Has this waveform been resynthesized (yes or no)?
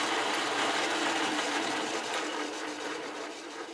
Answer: yes